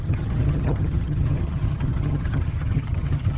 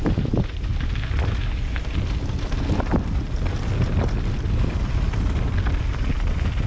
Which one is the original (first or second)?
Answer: second